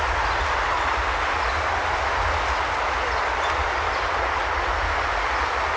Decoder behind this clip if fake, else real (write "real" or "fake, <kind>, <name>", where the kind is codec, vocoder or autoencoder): real